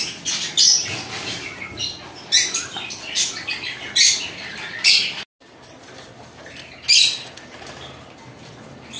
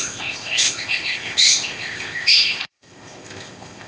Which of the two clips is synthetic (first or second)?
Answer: second